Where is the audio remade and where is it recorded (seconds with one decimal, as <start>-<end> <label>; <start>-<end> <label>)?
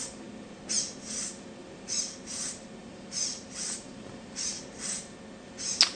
0.0-2.8 recorded; 2.8-4.6 remade; 4.6-5.9 recorded